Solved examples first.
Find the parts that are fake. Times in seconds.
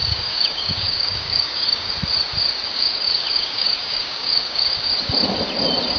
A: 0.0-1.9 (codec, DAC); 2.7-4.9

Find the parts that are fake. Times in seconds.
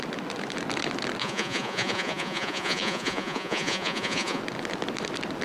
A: 1.2-4.4 (vocoder, Vocos)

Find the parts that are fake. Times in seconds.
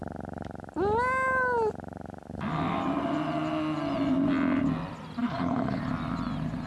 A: 5.2-5.8 (codec, HILCodec)